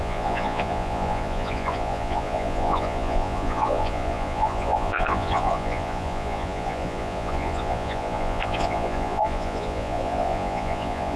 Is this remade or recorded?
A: remade